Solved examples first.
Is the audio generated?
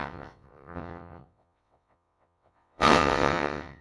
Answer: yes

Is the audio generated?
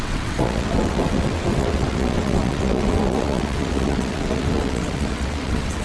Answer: yes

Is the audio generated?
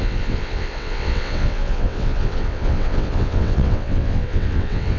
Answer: yes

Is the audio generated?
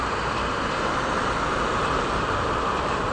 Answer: no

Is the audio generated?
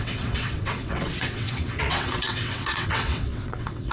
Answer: yes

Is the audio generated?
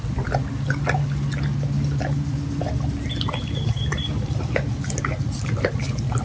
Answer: no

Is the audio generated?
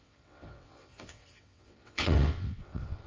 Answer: yes